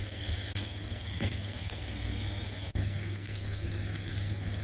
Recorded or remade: remade